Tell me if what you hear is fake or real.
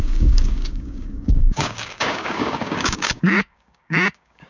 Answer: fake